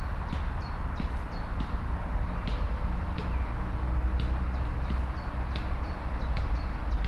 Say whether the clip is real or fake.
real